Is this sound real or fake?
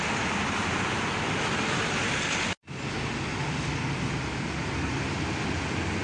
real